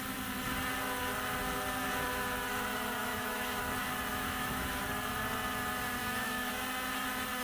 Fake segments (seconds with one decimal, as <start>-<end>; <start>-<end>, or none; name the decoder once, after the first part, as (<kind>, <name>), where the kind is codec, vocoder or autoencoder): 3.0-3.6 (autoencoder, DAC-VAE); 4.1-4.8; 6.0-6.5